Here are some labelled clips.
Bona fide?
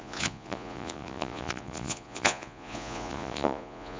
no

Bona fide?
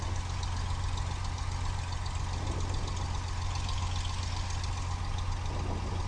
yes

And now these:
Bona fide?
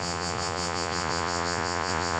no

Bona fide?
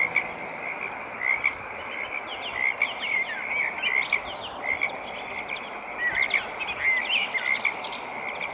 yes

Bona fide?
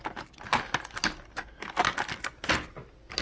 yes